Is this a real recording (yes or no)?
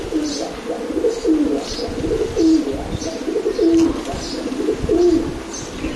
yes